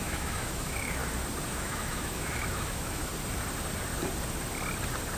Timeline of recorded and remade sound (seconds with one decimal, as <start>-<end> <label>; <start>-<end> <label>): 0.0-1.0 remade; 1.0-1.5 recorded; 1.5-3.1 remade; 3.1-5.2 recorded